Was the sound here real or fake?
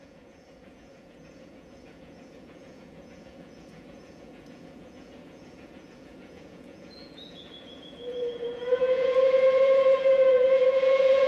fake